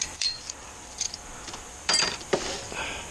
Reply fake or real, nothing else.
fake